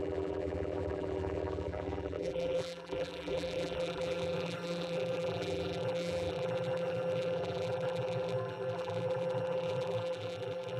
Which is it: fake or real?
fake